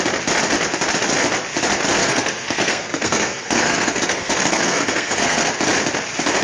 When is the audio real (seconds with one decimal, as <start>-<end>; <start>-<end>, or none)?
0.0-2.0; 5.5-6.4